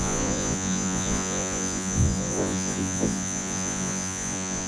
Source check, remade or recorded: remade